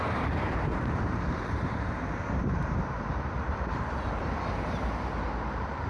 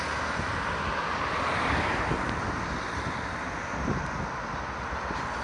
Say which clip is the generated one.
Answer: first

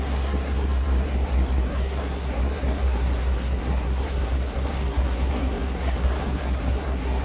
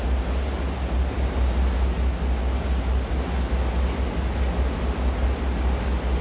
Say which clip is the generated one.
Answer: first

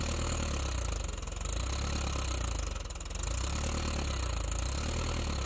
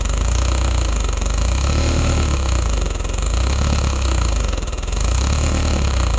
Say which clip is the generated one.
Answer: second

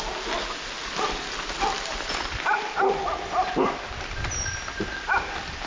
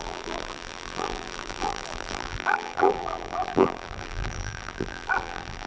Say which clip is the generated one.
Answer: second